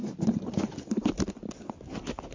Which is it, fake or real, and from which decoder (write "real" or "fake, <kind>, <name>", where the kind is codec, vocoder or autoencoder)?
real